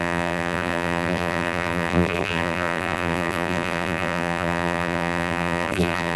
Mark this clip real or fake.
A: fake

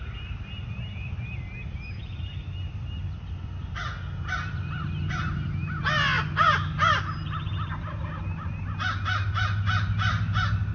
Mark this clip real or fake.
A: real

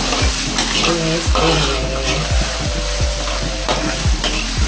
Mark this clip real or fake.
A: real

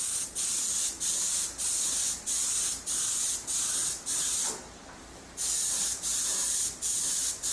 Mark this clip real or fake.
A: real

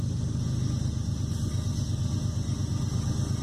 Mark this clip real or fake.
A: real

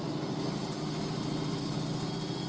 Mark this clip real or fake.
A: real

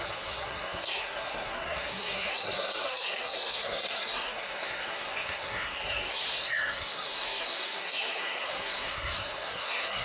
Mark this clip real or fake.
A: fake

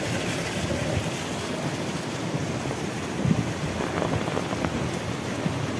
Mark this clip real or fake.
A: real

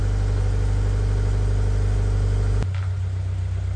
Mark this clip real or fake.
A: real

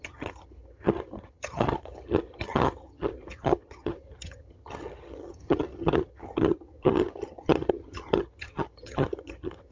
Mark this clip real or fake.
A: fake